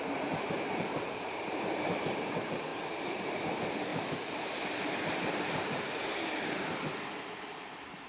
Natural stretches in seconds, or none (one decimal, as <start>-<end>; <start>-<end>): none